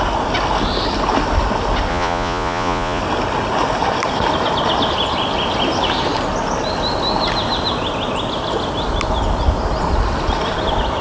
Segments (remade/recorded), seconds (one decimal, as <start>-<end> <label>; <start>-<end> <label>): 0.0-1.9 recorded; 1.9-3.0 remade; 3.0-11.0 recorded